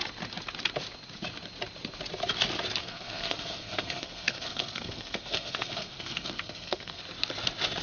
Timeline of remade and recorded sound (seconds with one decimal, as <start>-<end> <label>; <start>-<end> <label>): 0.0-2.8 recorded; 2.8-7.0 remade; 7.0-7.8 recorded